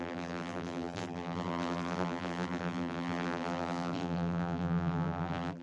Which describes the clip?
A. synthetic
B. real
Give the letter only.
A